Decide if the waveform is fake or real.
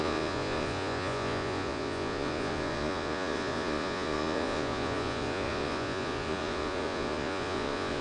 fake